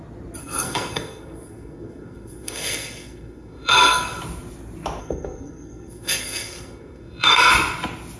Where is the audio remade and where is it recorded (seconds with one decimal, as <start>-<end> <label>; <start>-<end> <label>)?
0.0-0.4 recorded; 0.4-4.2 remade; 4.2-5.0 recorded; 5.0-7.5 remade; 7.5-8.2 recorded